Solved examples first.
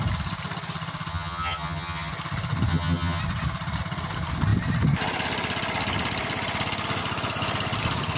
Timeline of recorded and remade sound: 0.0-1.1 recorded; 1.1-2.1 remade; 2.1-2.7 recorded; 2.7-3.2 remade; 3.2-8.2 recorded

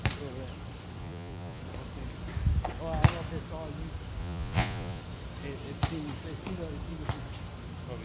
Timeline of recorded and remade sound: 0.0-1.0 recorded; 1.0-1.6 remade; 1.6-4.2 recorded; 4.2-5.0 remade; 5.0-8.0 recorded

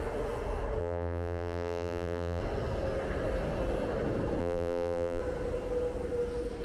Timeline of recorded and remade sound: 0.0-0.8 recorded; 0.8-2.4 remade; 2.4-4.4 recorded; 4.4-5.2 remade; 5.2-6.6 recorded